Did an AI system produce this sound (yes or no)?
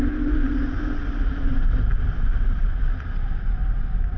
no